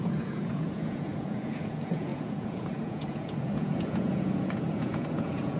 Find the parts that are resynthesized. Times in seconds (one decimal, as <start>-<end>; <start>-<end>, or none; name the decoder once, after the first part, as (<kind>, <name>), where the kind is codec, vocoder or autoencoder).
0.0-5.6 (vocoder, Vocos)